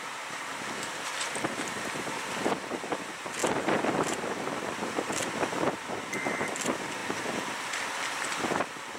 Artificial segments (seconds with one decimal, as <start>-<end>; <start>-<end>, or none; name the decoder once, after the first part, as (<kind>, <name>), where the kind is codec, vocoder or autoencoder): 3.4-5.7 (vocoder, BigVGAN v2)